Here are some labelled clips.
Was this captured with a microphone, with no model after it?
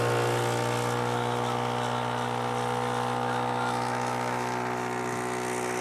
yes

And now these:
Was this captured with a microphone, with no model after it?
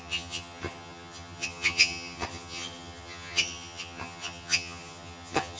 no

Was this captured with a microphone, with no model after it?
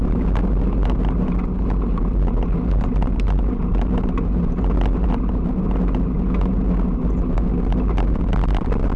yes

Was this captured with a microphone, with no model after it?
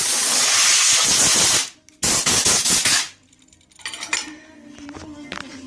yes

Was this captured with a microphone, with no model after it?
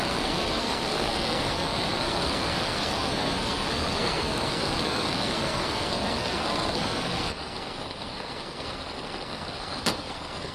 no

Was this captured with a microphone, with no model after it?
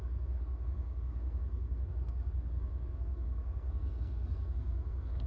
no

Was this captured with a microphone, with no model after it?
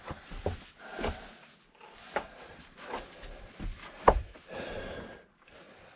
yes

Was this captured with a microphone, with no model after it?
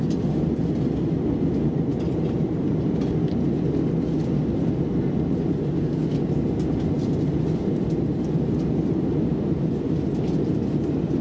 yes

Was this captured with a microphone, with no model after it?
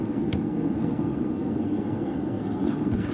no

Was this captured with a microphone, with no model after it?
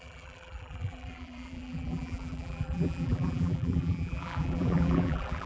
no